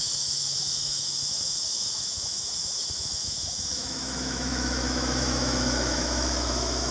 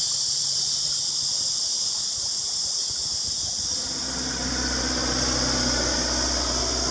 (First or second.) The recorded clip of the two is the second